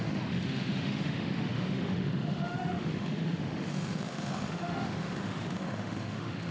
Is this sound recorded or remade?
remade